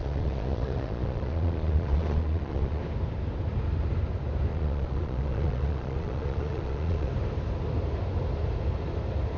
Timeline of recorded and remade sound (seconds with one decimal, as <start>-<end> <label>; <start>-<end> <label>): 0.0-2.8 remade; 2.8-4.5 recorded; 4.5-7.1 remade; 7.1-9.4 recorded